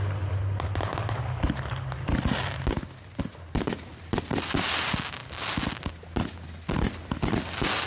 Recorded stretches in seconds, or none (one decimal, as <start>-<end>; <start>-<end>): 0.0-7.9